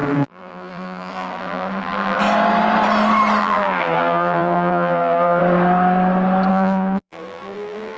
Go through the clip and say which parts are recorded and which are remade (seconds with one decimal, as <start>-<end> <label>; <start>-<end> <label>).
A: 0.0-2.2 remade; 2.2-3.4 recorded; 3.4-5.4 remade; 5.4-6.5 recorded; 6.5-8.0 remade